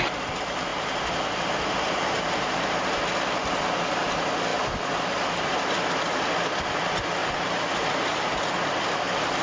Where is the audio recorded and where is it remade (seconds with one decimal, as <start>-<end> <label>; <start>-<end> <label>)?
0.0-0.7 recorded; 0.7-3.0 remade; 3.0-7.2 recorded; 7.2-8.4 remade; 8.4-9.4 recorded

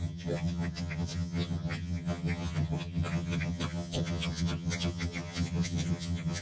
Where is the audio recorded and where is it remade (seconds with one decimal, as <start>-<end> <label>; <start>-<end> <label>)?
0.0-6.4 remade

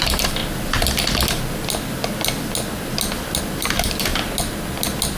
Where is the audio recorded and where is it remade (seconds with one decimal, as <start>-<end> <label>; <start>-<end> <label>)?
0.0-0.4 remade; 0.4-3.4 recorded; 3.4-4.1 remade; 4.1-5.2 recorded

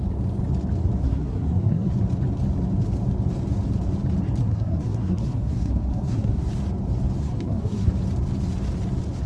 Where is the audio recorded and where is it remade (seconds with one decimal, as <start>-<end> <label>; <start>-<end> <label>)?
0.0-1.0 recorded; 1.0-1.9 remade; 1.9-4.4 recorded; 4.4-6.5 remade; 6.5-7.2 recorded; 7.2-7.9 remade; 7.9-9.3 recorded

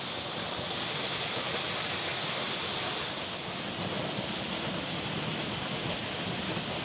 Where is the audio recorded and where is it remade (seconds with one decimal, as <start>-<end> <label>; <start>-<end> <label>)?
0.0-6.8 recorded

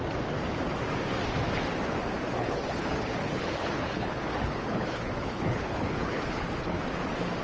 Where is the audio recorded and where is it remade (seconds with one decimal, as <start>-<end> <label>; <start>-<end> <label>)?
0.0-2.4 recorded; 2.4-6.8 remade; 6.8-7.4 recorded

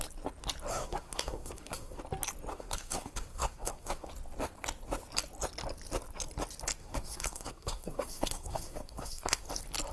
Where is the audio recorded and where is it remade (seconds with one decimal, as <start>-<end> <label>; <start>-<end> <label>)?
0.0-0.7 recorded; 0.7-2.0 remade; 2.0-2.5 recorded; 2.5-4.1 remade; 4.1-6.8 recorded; 6.8-9.5 remade; 9.5-9.9 recorded